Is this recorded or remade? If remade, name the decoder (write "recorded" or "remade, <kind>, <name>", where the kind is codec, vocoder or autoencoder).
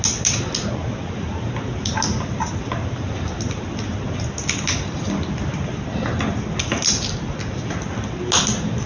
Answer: recorded